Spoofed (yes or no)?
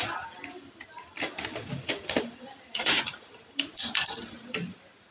yes